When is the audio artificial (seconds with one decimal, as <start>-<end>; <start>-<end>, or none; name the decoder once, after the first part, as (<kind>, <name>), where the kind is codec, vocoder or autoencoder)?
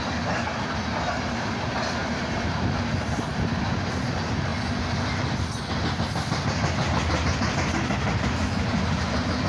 2.0-3.3 (vocoder, BigVGAN v2)